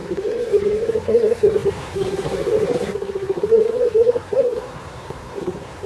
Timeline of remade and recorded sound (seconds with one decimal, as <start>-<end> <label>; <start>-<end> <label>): 0.0-5.9 remade